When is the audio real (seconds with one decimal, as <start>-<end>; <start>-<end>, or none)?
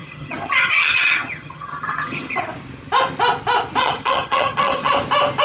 2.4-3.8; 4.9-5.4